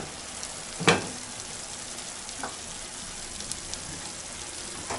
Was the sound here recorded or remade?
recorded